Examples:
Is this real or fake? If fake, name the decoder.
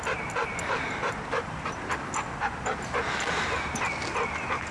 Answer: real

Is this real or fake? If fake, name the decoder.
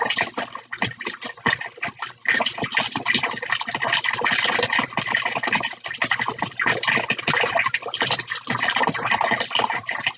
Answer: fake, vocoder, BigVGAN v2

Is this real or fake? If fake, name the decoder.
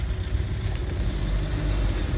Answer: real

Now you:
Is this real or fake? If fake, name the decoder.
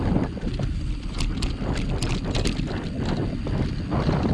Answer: real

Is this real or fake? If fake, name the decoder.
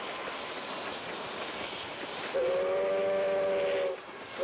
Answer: real